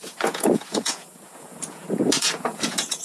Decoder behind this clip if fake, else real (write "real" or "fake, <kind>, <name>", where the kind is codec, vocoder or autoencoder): fake, vocoder, Vocos